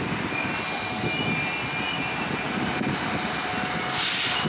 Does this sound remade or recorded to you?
recorded